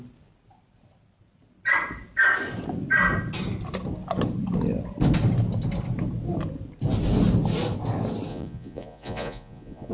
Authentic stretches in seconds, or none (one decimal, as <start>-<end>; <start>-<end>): 0.0-8.3